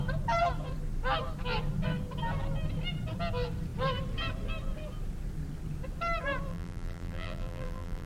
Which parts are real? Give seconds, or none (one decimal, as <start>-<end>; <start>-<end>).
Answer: 0.0-6.5